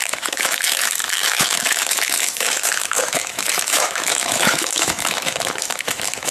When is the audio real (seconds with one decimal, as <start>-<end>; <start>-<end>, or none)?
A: none

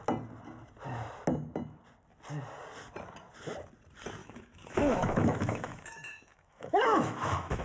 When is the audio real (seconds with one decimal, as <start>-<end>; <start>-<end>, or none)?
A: 0.0-4.2

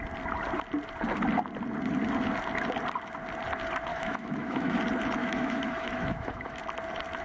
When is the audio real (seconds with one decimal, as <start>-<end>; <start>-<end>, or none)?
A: 0.0-3.9; 4.8-5.2; 6.6-7.2

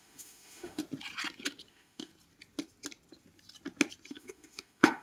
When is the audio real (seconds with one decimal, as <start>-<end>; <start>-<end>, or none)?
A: 0.8-1.7; 2.1-4.1